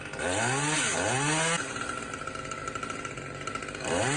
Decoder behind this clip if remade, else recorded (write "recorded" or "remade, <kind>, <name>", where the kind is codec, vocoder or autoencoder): recorded